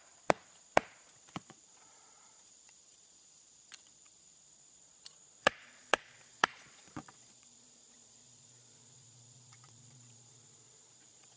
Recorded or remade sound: remade